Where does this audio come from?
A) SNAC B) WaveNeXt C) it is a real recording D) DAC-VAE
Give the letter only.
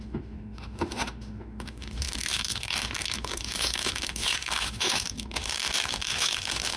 D